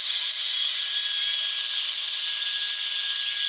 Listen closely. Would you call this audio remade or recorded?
recorded